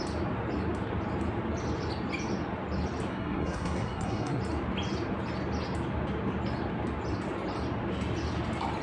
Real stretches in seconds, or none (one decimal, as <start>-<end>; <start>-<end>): 0.0-3.1; 4.4-8.8